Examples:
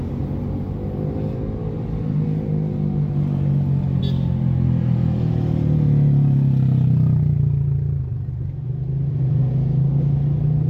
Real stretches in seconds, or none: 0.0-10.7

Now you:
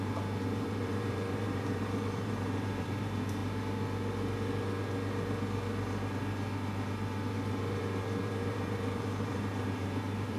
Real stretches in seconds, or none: 3.4-7.3

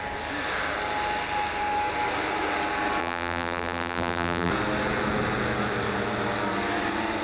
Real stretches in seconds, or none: 0.0-3.0; 4.5-7.2

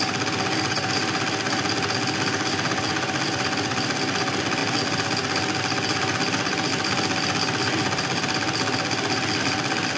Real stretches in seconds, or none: 0.0-10.0

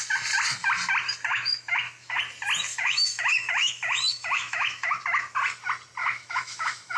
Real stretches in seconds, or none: 0.0-1.3; 2.2-2.7; 5.0-6.0

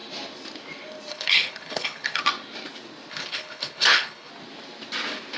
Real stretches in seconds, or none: 0.0-1.1; 2.2-3.1; 4.3-5.4